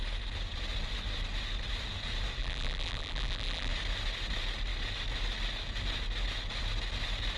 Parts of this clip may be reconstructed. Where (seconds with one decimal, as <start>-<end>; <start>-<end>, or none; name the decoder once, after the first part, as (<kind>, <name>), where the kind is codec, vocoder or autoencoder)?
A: 2.4-3.7 (vocoder, BigVGAN v2)